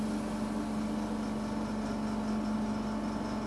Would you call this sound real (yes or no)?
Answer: yes